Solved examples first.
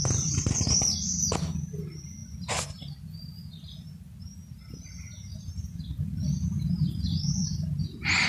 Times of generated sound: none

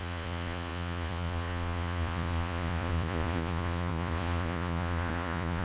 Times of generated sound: 0.0-5.6 (vocoder, Vocos)

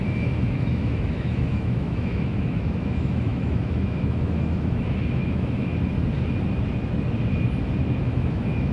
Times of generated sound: 0.0-5.7 (autoencoder, DAC-VAE); 8.0-8.7